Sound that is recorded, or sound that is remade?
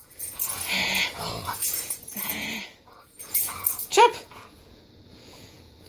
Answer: remade